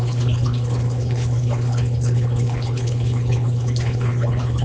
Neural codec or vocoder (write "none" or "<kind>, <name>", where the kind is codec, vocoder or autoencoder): codec, HILCodec